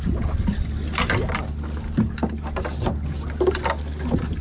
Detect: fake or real real